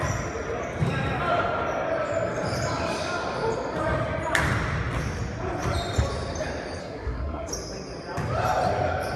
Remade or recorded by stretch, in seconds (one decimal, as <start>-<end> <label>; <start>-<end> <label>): 0.0-6.8 recorded; 6.8-7.5 remade; 7.5-9.2 recorded